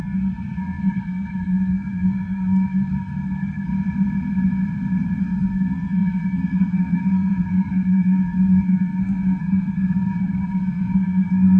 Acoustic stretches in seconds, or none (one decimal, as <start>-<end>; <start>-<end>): 3.7-5.2

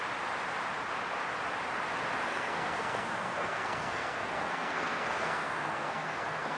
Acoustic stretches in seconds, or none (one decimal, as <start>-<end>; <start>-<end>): 0.0-2.3

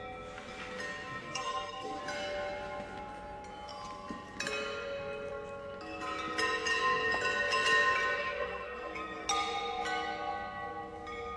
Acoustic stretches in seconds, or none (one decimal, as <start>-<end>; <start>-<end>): 0.0-1.2; 2.0-8.2; 9.2-11.4

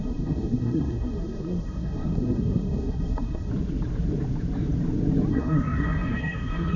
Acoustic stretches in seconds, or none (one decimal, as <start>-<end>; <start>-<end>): 3.5-5.3